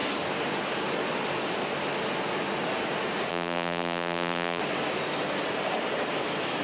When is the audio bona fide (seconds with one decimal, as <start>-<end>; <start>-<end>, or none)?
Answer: 0.0-3.3; 4.6-6.6